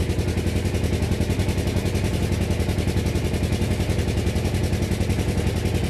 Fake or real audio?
real